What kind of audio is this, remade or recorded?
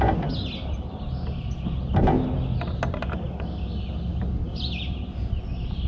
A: recorded